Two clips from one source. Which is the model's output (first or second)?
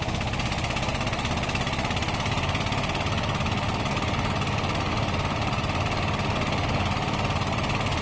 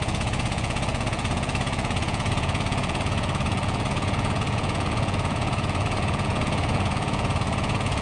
second